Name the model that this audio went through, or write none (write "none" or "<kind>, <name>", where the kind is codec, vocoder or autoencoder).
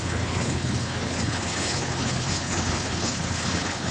codec, HILCodec